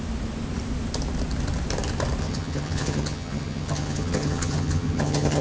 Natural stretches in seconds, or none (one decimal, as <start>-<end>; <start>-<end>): 0.0-2.2